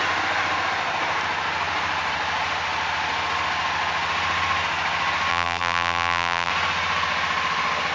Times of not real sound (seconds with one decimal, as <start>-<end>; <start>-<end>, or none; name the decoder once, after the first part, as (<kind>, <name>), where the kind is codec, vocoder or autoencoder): 5.3-6.5 (vocoder, BigVGAN v2)